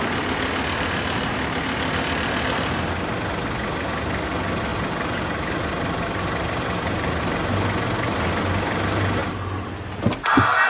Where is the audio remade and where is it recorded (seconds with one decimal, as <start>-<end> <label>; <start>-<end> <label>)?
0.0-10.7 recorded